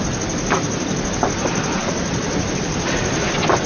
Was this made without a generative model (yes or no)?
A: no